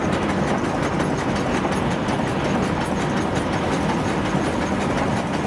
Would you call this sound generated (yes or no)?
no